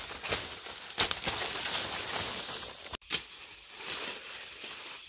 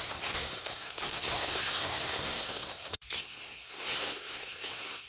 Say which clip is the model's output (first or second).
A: second